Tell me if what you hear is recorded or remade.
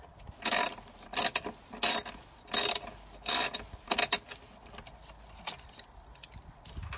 recorded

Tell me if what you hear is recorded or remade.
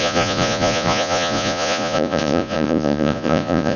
remade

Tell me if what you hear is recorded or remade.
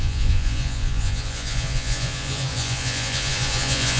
remade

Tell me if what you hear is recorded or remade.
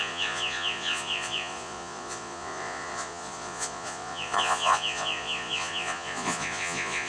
remade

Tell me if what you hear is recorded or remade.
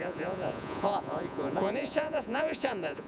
remade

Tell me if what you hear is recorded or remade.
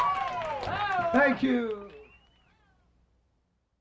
recorded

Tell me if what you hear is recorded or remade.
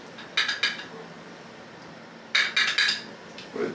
recorded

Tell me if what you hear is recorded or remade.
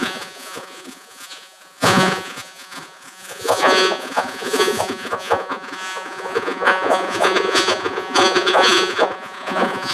remade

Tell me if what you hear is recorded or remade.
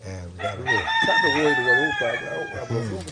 recorded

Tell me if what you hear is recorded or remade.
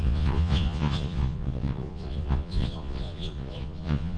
remade